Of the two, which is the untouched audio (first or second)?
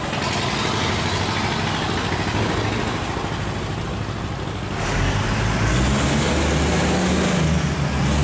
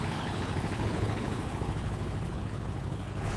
first